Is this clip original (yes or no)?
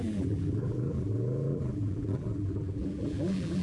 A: no